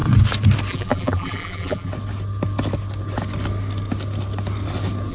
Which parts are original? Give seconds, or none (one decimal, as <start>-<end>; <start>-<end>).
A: 0.0-0.7; 1.9-5.1